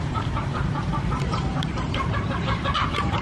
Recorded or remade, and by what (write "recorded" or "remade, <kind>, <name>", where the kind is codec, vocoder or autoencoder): remade, vocoder, BigVGAN v2